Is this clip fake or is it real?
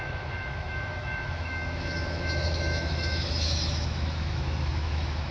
fake